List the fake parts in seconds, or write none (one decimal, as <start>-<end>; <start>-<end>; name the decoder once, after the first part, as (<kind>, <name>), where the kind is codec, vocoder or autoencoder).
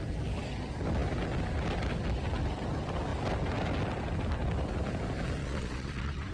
5.4-6.3 (vocoder, Vocos)